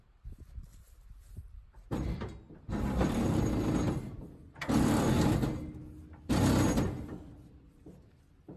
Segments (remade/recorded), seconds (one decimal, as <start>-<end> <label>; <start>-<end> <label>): 0.0-0.7 recorded; 0.7-2.2 remade; 2.2-8.6 recorded